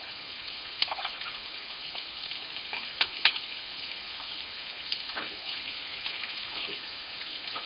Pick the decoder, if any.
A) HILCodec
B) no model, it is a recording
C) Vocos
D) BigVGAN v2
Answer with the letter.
A